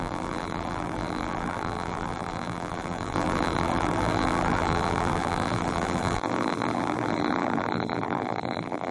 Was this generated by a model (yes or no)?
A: yes